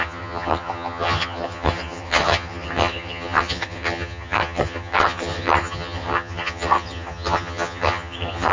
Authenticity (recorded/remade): remade